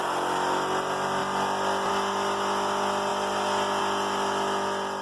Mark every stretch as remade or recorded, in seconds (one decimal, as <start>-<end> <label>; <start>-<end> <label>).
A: 0.0-5.0 recorded